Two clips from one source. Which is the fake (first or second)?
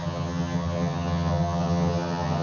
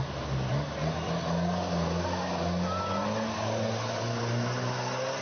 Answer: first